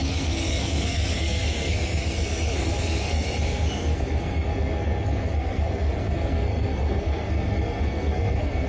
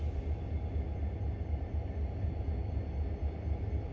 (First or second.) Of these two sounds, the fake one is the first